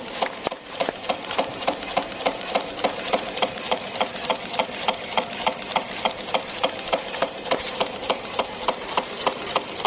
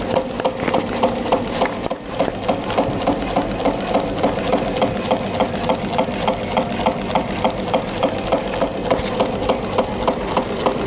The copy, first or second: first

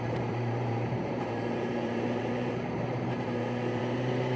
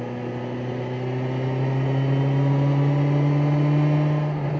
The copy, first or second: first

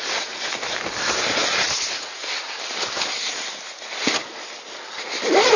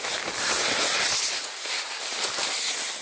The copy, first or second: second